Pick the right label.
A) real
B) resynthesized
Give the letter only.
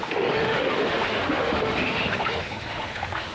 B